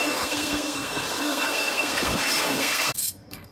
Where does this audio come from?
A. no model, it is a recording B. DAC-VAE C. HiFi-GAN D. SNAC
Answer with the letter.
D